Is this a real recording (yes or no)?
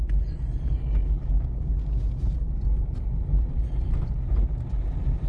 yes